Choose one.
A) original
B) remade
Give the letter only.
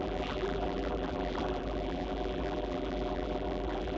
B